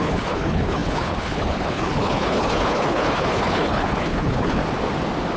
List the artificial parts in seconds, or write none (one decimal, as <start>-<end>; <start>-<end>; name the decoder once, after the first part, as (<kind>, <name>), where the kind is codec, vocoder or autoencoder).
0.0-4.6 (codec, HILCodec)